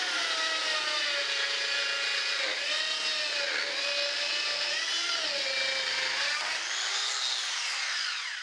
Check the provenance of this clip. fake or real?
real